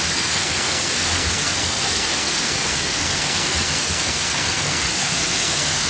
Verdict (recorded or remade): remade